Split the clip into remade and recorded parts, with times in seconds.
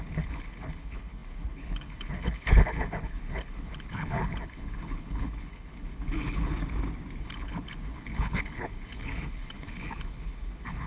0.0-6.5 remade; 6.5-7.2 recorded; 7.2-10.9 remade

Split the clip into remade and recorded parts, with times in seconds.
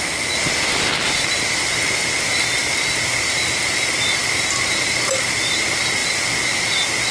0.0-7.1 recorded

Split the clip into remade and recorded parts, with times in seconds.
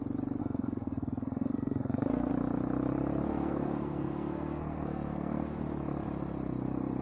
0.0-0.4 recorded; 0.4-2.3 remade; 2.3-3.3 recorded; 3.3-5.6 remade; 5.6-7.0 recorded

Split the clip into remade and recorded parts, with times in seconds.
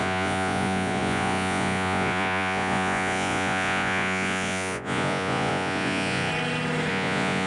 0.0-6.3 remade; 6.3-6.9 recorded; 6.9-7.5 remade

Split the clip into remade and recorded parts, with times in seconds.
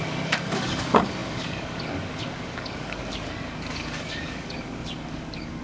0.0-5.6 remade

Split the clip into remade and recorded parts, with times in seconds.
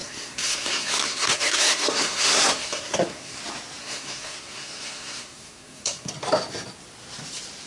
0.0-3.4 remade; 3.4-3.8 recorded; 3.8-6.1 remade; 6.1-7.7 recorded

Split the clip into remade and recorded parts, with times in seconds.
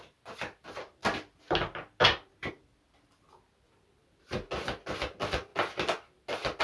0.0-6.6 recorded